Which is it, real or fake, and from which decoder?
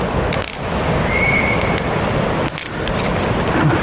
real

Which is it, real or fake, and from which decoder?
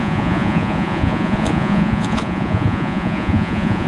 fake, vocoder, Vocos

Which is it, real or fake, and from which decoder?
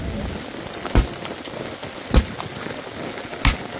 real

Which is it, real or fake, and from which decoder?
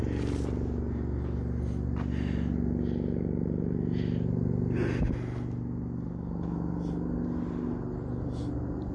real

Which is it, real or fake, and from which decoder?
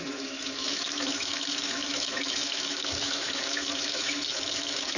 fake, autoencoder, DAC-VAE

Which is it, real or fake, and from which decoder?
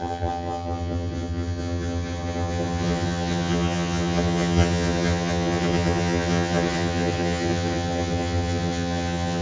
fake, vocoder, HiFi-GAN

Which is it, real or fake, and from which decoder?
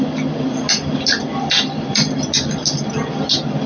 real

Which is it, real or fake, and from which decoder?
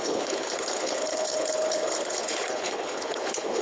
fake, codec, HILCodec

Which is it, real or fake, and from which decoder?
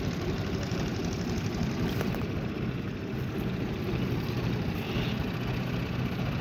real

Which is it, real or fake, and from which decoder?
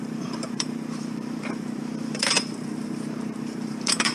fake, vocoder, BigVGAN v2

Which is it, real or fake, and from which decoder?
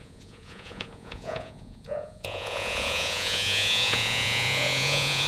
fake, vocoder, Vocos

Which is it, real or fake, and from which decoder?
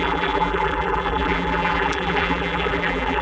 fake, vocoder, BigVGAN v2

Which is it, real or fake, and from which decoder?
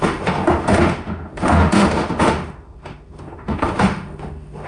fake, autoencoder, DAC-VAE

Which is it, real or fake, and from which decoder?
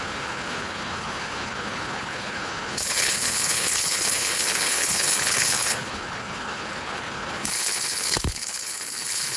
fake, codec, HILCodec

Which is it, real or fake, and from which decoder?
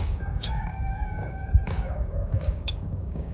fake, codec, DAC